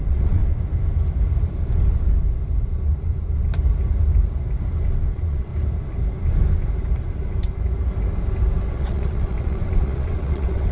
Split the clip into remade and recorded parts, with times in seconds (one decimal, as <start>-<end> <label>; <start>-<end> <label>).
0.0-0.4 remade; 0.4-5.1 recorded; 5.1-5.5 remade; 5.5-8.7 recorded; 8.7-10.7 remade